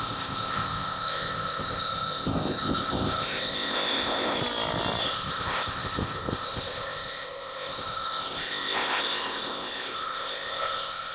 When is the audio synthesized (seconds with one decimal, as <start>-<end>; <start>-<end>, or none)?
0.0-4.4; 5.0-11.1